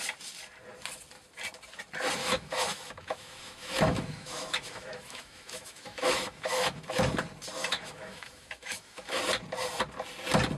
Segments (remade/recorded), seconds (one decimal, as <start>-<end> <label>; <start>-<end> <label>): 0.0-2.2 recorded; 2.2-7.0 remade; 7.0-7.6 recorded; 7.6-9.2 remade; 9.2-10.6 recorded